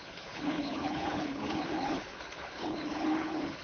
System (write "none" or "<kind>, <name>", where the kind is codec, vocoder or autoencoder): codec, HILCodec